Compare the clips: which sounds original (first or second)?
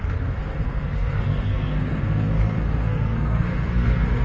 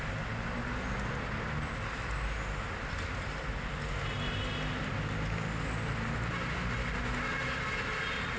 second